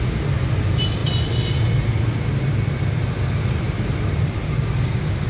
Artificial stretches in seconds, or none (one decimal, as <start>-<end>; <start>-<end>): none